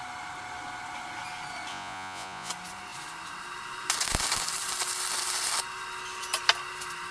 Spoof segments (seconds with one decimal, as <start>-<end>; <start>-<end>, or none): 1.7-2.5